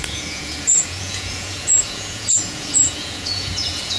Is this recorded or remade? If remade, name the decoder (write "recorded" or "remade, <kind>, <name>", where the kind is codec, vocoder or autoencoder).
remade, vocoder, Vocos